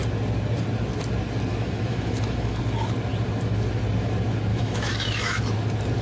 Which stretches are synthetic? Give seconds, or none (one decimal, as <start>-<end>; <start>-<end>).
1.5-2.6; 4.5-5.4

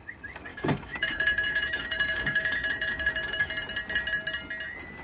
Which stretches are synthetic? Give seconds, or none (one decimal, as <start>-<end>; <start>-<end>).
0.5-3.5

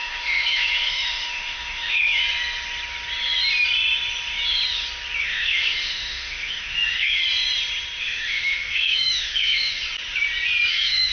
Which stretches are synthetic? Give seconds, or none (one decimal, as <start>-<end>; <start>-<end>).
0.0-2.2; 5.2-7.2; 8.0-9.8; 10.7-11.1

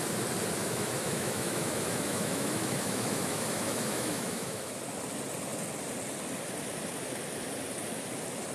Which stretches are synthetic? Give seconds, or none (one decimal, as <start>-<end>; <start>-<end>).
0.6-4.8

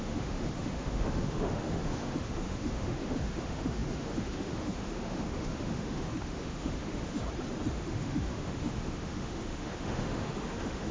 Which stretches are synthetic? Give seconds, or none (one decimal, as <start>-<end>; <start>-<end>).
0.0-7.2; 7.7-10.9

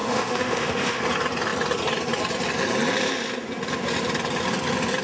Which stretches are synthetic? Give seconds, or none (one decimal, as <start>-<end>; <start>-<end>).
0.0-1.0

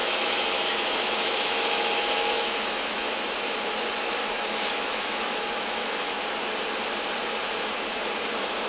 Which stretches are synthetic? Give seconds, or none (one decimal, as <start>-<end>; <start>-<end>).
0.0-3.1; 4.2-6.1